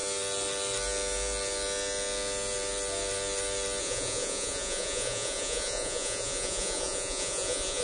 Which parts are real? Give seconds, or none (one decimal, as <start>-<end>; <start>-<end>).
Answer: 0.0-3.8